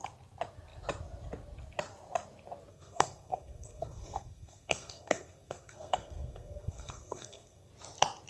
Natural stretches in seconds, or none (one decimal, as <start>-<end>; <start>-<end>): 0.0-2.7; 7.7-8.3